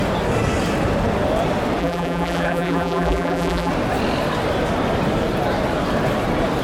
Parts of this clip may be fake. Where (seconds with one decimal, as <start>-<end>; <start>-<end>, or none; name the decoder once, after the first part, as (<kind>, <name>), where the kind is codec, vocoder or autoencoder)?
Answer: 1.8-3.7 (vocoder, BigVGAN v2)